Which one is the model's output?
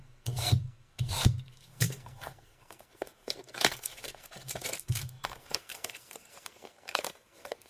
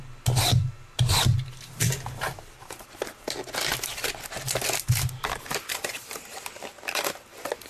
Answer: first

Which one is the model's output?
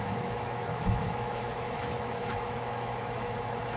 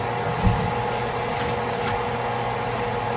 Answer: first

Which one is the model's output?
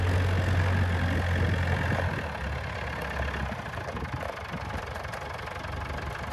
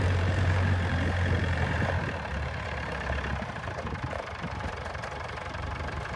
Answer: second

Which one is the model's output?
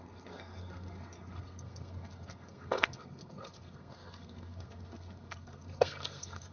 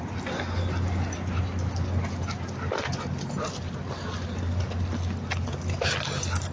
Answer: first